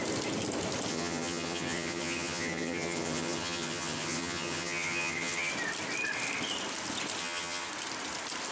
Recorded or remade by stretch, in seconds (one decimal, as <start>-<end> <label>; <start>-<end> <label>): 0.0-0.9 recorded; 0.9-5.5 remade; 5.5-7.2 recorded; 7.2-7.7 remade; 7.7-8.5 recorded